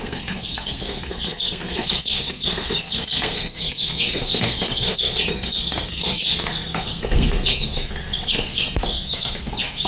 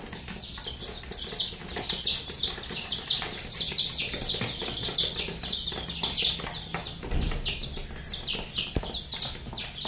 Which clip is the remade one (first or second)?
first